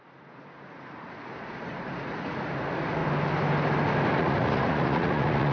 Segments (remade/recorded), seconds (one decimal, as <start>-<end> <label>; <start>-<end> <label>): 0.0-3.0 remade; 3.0-4.1 recorded; 4.1-5.5 remade